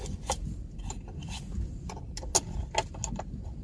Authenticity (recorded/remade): recorded